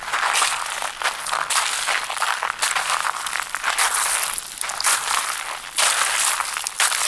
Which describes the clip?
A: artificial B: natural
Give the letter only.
B